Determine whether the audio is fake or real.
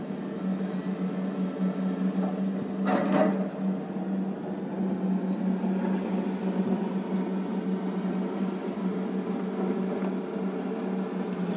real